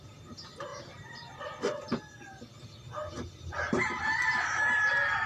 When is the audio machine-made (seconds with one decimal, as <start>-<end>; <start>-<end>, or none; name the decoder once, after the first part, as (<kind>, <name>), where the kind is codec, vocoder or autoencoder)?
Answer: 0.7-1.4 (vocoder, BigVGAN v2)